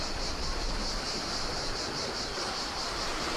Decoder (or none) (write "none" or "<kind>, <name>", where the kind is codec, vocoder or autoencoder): vocoder, BigVGAN v2